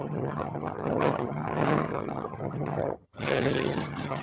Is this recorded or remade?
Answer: remade